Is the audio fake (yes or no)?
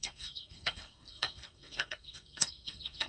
yes